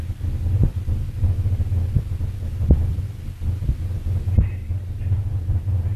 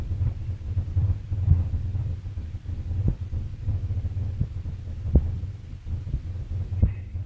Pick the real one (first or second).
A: first